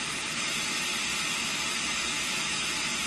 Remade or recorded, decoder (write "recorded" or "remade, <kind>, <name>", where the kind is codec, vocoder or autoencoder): recorded